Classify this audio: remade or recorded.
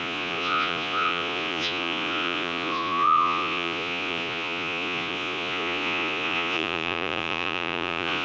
remade